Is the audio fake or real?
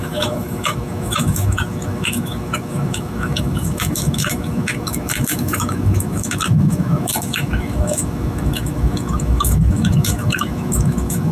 fake